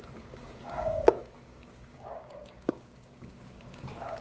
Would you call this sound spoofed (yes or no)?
yes